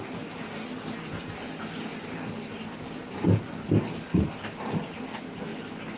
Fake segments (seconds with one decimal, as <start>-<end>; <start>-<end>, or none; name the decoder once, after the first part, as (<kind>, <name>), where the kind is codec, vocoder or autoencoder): none